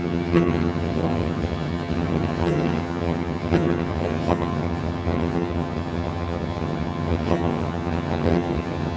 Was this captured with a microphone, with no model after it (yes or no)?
no